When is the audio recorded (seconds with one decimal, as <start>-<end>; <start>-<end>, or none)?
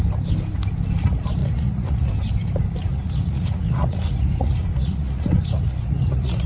0.0-1.4; 2.1-2.8